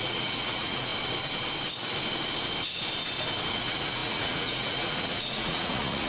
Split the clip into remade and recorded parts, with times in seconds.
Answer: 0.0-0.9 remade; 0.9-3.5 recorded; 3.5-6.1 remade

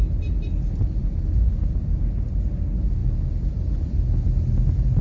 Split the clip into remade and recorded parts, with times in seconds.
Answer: 0.0-5.0 recorded

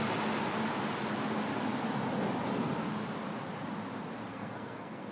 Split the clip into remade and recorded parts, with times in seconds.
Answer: 0.0-4.3 recorded; 4.3-5.1 remade

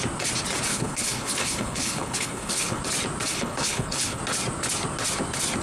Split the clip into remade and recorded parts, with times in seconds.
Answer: 0.0-0.7 recorded; 0.7-2.8 remade; 2.8-3.3 recorded; 3.3-4.2 remade; 4.2-5.6 recorded

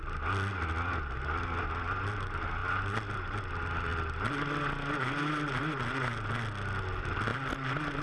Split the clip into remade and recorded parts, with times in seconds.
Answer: 0.0-8.0 recorded